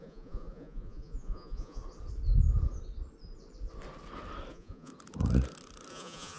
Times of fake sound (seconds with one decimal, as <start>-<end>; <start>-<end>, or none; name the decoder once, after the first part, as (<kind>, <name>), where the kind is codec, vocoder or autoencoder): 0.0-1.8 (vocoder, Vocos); 4.5-4.9; 5.9-6.4